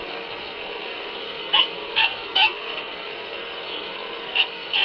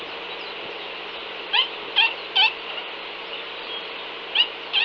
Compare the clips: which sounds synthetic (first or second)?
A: first